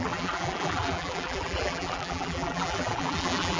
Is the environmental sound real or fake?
fake